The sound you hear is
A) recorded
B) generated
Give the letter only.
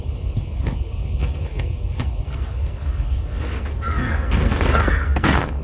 B